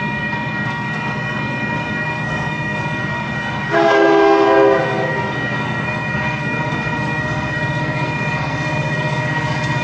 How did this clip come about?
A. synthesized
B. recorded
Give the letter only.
A